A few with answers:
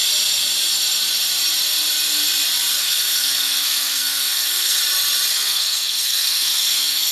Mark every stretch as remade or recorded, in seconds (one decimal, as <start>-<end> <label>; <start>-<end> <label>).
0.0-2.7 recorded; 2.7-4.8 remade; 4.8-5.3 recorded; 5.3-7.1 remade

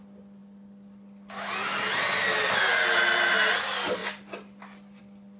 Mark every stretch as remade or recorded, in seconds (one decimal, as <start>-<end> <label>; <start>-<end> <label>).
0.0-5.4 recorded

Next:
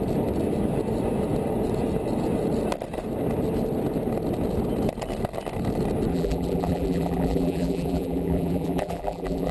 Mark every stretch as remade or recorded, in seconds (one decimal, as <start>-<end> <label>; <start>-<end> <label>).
0.0-6.1 recorded; 6.1-9.5 remade

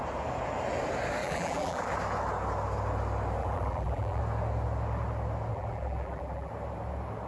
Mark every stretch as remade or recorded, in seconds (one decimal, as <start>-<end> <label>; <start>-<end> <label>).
0.0-1.2 recorded; 1.2-1.8 remade; 1.8-3.4 recorded; 3.4-4.2 remade; 4.2-5.5 recorded; 5.5-6.5 remade; 6.5-7.3 recorded

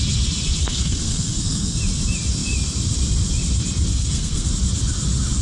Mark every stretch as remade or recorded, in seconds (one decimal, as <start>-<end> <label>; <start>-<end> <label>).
0.0-0.6 recorded; 0.6-1.8 remade; 1.8-3.9 recorded; 3.9-4.5 remade; 4.5-5.4 recorded

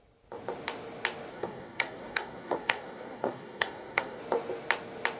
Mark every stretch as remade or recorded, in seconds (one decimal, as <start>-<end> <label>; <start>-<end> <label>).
0.0-1.3 recorded; 1.3-4.2 remade; 4.2-5.2 recorded

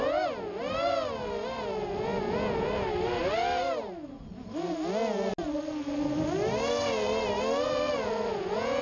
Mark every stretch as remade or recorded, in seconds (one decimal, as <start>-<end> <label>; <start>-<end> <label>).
0.0-8.8 recorded